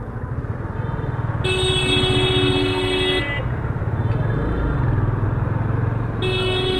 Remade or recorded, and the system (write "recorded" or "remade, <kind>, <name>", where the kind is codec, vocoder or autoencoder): recorded